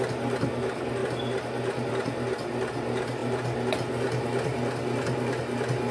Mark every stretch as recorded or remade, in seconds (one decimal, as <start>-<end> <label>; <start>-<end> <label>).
0.0-5.9 recorded